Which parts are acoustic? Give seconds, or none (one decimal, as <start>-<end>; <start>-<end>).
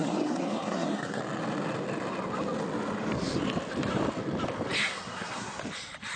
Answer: 1.2-4.8; 5.6-6.2